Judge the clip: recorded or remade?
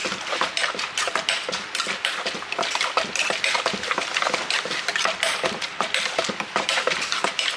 remade